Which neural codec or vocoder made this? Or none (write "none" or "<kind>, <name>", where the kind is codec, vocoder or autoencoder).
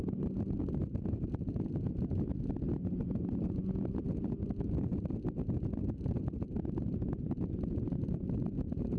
none